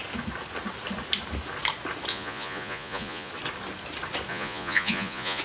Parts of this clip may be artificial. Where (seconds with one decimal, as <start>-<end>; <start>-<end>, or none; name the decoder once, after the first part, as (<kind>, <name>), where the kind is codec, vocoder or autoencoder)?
2.1-3.3 (vocoder, Vocos); 4.3-5.4